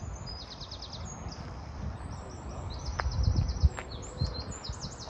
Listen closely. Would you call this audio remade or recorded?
recorded